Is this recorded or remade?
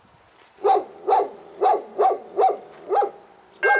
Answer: recorded